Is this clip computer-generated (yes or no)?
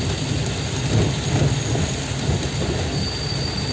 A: no